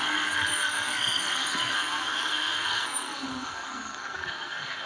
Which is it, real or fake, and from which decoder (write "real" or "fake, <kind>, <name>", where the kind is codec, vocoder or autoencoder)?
fake, codec, SNAC